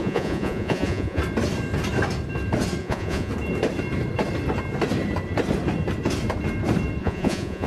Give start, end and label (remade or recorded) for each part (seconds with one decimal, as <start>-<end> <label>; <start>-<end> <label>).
0.0-1.2 remade; 1.2-2.8 recorded; 2.8-3.3 remade; 3.3-7.0 recorded; 7.0-7.7 remade